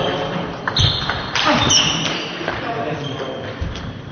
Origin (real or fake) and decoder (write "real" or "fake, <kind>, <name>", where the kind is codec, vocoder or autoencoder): fake, vocoder, BigVGAN v2